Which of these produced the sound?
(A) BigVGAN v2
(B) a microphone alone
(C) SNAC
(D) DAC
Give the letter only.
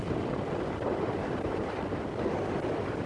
B